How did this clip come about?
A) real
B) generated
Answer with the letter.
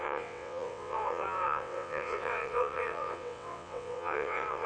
B